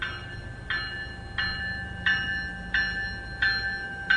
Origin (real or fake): real